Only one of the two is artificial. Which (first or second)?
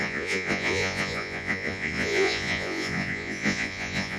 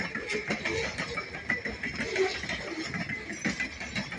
first